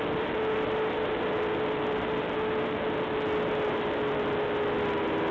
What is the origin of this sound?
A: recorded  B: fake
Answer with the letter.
A